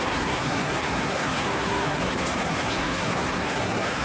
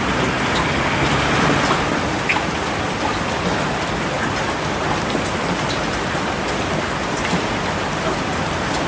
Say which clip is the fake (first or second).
first